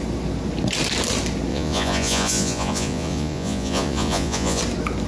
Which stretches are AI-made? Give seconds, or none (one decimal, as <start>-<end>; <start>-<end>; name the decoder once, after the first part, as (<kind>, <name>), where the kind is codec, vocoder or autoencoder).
1.5-4.6 (vocoder, Vocos)